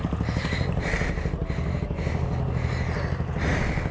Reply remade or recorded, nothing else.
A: recorded